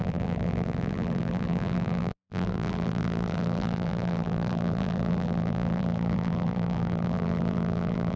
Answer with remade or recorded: remade